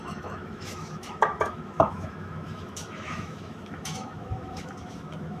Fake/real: fake